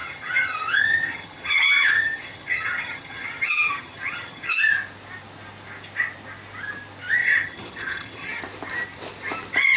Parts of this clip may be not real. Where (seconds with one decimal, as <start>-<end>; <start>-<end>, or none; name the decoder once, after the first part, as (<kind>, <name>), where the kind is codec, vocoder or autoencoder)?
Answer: 0.0-4.6 (vocoder, HiFi-GAN); 7.2-8.4